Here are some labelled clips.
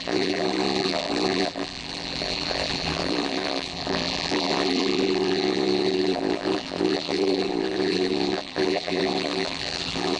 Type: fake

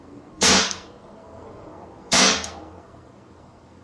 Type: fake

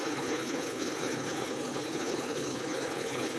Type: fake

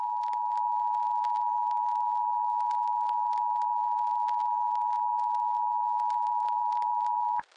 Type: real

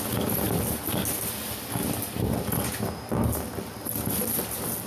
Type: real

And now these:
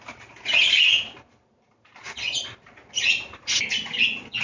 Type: real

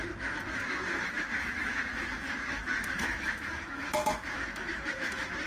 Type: fake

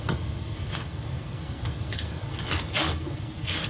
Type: fake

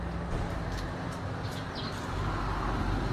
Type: real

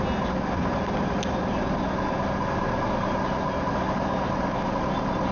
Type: real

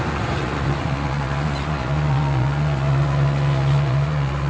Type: fake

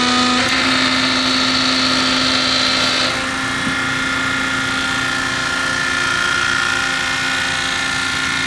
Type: real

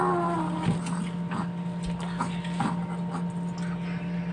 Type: real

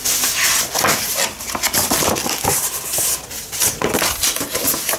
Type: real